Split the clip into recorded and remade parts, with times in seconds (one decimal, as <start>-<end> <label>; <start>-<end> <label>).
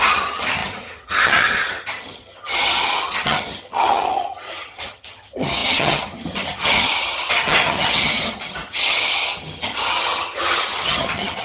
0.0-11.4 remade